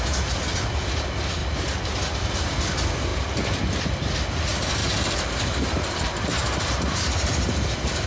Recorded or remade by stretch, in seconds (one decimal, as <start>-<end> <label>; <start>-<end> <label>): 0.0-4.8 recorded; 4.8-8.1 remade